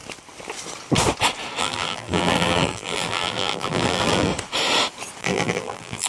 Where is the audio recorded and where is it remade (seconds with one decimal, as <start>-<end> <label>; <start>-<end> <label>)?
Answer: 0.0-1.6 recorded; 1.6-4.3 remade; 4.3-5.2 recorded; 5.2-6.1 remade